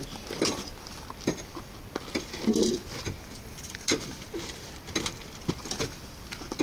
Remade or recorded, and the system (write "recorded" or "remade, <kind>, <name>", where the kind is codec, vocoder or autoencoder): remade, vocoder, BigVGAN v2